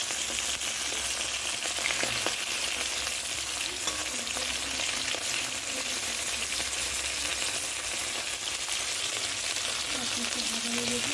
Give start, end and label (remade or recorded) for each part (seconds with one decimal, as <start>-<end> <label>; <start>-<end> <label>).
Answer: 0.0-11.1 recorded